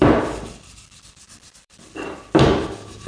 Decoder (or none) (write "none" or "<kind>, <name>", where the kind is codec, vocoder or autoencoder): vocoder, BigVGAN v2